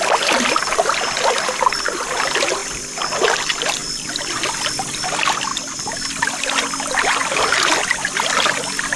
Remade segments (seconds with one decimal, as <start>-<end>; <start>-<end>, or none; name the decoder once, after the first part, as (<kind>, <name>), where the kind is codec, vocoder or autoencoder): 3.8-4.5 (vocoder, BigVGAN v2); 7.2-8.5